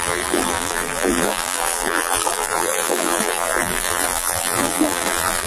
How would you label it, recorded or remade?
remade